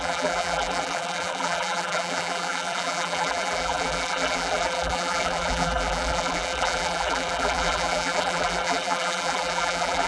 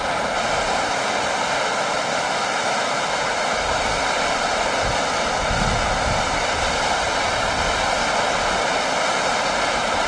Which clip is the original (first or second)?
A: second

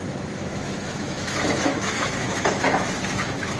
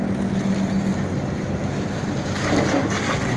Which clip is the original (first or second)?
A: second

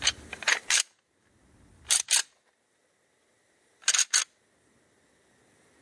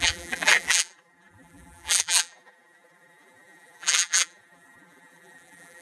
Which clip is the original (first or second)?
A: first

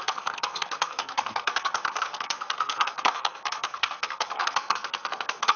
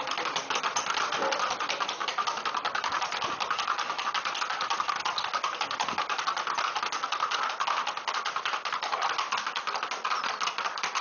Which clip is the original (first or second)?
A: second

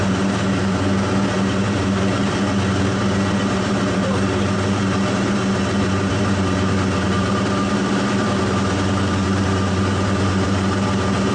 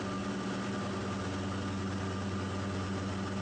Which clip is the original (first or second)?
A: second